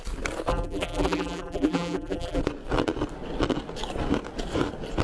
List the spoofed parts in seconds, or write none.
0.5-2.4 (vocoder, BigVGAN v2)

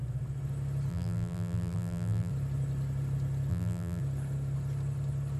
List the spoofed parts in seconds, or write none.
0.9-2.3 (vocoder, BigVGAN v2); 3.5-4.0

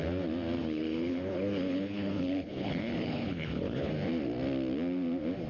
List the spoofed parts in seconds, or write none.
0.6-3.9 (codec, HILCodec)

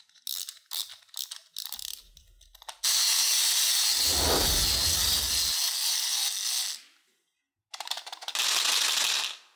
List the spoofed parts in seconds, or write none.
none

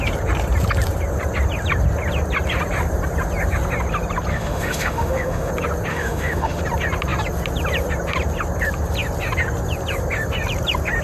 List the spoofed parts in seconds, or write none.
4.3-5.5 (autoencoder, DAC-VAE); 5.9-6.6